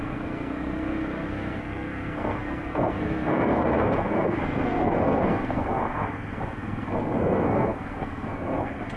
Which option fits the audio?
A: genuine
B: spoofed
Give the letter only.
B